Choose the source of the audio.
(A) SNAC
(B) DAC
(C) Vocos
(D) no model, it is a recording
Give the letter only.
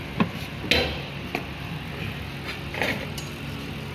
D